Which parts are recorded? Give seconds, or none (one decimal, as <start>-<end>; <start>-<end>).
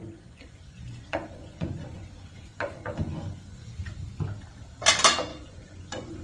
3.7-5.3